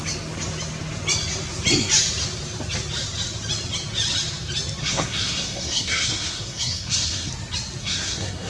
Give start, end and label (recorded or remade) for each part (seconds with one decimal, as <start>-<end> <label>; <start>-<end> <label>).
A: 0.0-4.8 recorded; 4.8-7.3 remade; 7.3-7.8 recorded; 7.8-8.5 remade